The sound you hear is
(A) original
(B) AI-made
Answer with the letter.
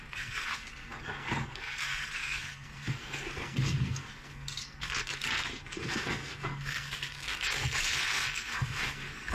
B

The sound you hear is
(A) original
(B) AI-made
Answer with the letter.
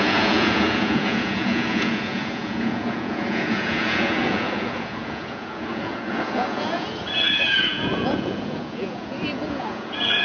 B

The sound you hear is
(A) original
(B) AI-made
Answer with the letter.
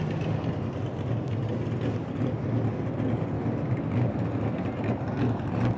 A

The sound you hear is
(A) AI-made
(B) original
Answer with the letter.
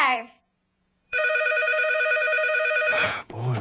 A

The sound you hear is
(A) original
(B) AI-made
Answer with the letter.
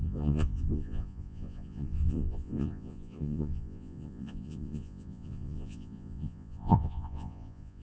B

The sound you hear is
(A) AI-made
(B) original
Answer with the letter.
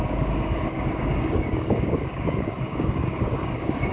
A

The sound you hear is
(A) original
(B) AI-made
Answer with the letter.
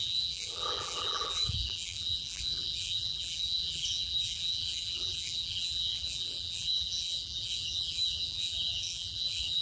B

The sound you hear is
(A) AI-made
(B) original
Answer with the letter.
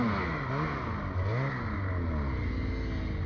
B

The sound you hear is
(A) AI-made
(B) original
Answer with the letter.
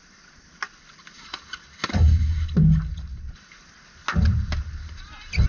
B